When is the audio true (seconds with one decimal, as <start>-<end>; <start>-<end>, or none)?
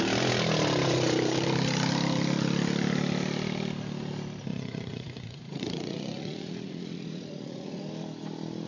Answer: 0.0-4.5; 7.8-8.7